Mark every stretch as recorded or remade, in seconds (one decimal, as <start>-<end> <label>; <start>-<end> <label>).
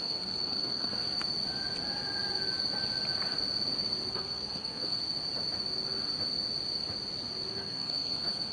0.0-0.9 remade; 0.9-4.1 recorded; 4.1-5.0 remade; 5.0-7.5 recorded; 7.5-8.5 remade